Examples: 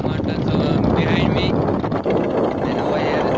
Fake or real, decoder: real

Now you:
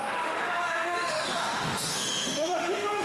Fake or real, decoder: fake, autoencoder, DAC-VAE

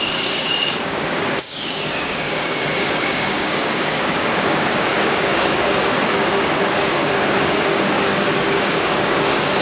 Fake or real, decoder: fake, codec, DAC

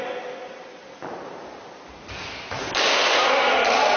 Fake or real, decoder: real